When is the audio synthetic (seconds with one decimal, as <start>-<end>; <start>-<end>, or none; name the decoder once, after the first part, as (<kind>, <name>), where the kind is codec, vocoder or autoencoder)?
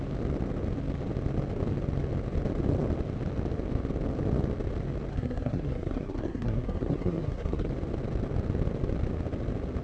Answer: 5.1-7.7 (codec, SNAC)